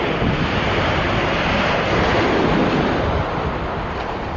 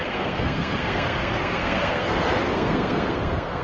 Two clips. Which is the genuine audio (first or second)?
first